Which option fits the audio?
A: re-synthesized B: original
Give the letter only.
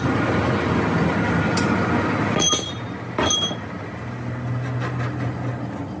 B